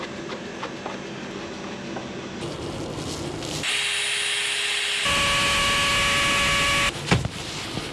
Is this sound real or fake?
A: real